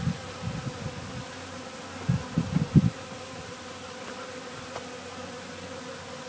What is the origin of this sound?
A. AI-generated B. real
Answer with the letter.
B